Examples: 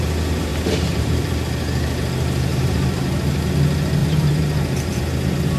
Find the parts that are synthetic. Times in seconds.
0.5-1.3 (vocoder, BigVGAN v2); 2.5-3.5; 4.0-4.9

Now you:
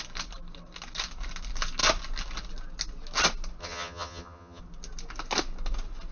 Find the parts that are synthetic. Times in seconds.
3.6-4.6 (vocoder, HiFi-GAN)

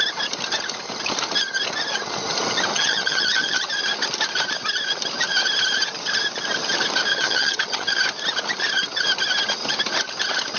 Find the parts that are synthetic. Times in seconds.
2.7-3.7 (vocoder, HiFi-GAN); 7.1-8.0

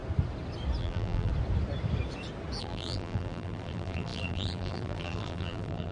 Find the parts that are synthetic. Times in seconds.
0.8-1.3 (vocoder, BigVGAN v2); 2.6-5.9

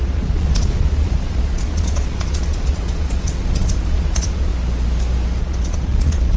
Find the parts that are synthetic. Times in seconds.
0.0-4.5 (vocoder, Vocos); 5.4-6.4

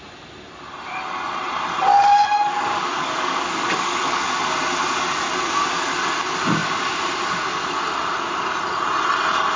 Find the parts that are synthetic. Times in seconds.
1.9-4.4 (codec, DAC)

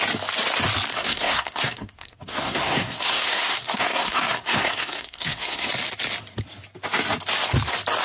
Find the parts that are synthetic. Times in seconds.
0.9-5.7 (codec, SNAC)

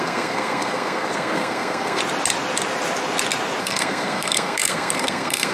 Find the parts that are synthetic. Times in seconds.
0.0-2.0 (codec, SNAC); 3.6-5.5